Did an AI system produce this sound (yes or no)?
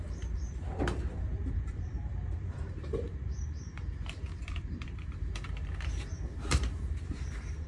yes